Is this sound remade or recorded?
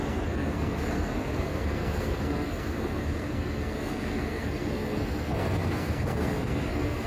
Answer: remade